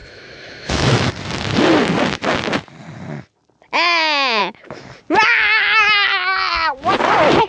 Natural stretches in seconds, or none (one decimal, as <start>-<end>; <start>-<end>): 1.1-4.4; 4.9-7.5